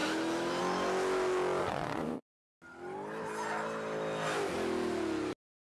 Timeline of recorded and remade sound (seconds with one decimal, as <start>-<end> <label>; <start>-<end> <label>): 0.0-1.6 recorded; 1.6-2.6 remade; 2.6-5.7 recorded